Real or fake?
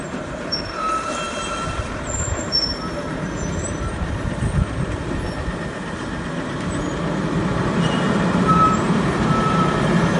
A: fake